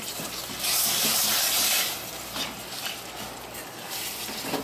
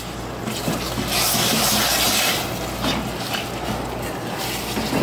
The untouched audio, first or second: second